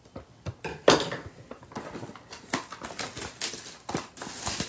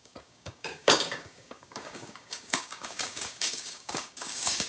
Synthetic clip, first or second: second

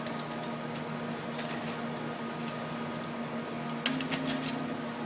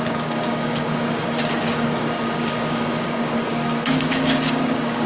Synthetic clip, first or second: second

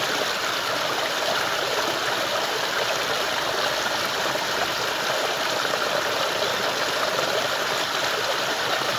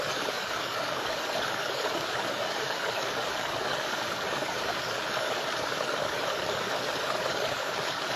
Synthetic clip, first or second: second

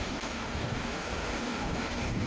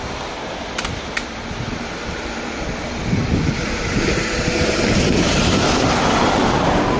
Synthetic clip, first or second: first